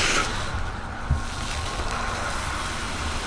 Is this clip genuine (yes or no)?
yes